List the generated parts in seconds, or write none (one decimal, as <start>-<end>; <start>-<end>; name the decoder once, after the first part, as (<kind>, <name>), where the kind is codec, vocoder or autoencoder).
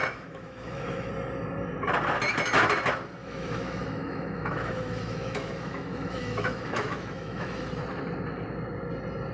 0.0-1.1 (autoencoder, DAC-VAE); 3.2-7.7